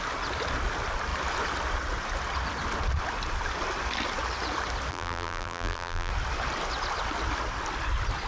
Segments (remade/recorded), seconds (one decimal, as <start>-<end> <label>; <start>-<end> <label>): 0.0-4.9 recorded; 4.9-6.1 remade; 6.1-8.3 recorded